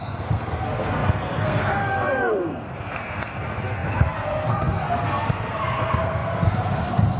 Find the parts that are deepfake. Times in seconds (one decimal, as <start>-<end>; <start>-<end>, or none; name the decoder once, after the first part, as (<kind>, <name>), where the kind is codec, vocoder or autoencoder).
0.0-7.2 (codec, SNAC)